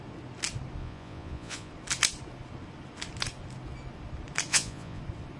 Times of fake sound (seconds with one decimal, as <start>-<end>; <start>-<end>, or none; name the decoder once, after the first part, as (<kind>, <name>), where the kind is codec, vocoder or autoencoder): 0.8-1.7 (vocoder, Vocos); 4.5-5.0